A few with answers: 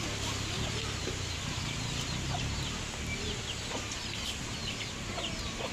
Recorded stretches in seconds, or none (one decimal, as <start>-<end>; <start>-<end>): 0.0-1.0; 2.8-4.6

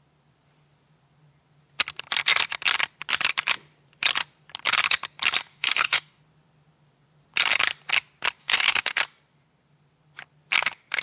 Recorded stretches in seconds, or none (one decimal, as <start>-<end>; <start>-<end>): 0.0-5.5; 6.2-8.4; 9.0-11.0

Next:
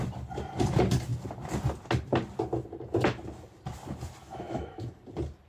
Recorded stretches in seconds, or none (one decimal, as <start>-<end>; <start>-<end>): 0.0-4.2; 4.9-5.5

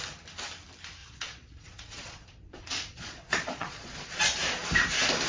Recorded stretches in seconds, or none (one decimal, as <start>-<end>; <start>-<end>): 0.0-1.0; 4.2-5.3